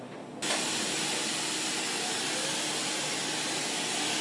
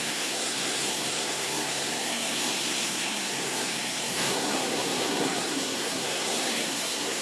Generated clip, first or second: second